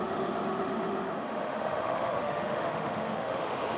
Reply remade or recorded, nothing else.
remade